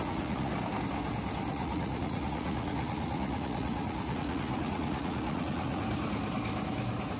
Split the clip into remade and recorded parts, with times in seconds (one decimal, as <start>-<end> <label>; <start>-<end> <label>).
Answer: 0.0-0.5 remade; 0.5-1.5 recorded; 1.5-5.8 remade; 5.8-7.2 recorded